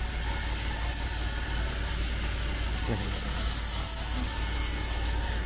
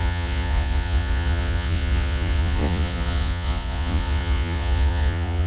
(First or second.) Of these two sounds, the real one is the first